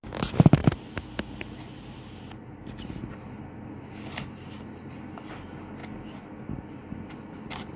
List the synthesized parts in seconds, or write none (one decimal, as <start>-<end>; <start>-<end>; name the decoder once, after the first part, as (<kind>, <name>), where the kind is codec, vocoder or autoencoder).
none